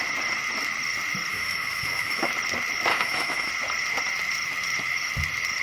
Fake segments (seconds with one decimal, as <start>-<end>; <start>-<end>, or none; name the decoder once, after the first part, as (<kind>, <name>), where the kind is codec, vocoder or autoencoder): 1.3-2.3 (autoencoder, DAC-VAE); 2.9-3.5